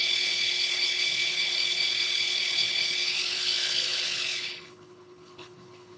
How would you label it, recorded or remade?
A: remade